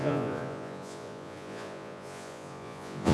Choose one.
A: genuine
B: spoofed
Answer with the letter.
B